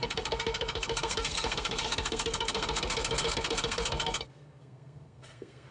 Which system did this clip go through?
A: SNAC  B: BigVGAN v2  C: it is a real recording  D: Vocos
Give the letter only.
A